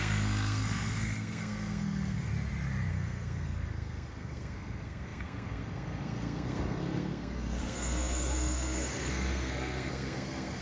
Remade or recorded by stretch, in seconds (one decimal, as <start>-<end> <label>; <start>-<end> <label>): 0.0-2.3 remade; 2.3-2.9 recorded; 2.9-10.6 remade